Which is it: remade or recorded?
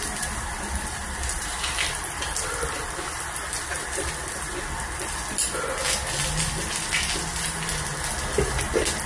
recorded